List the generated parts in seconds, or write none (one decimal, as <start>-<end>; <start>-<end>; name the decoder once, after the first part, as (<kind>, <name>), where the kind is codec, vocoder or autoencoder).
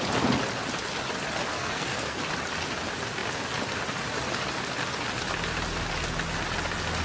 1.5-2.2 (codec, SNAC)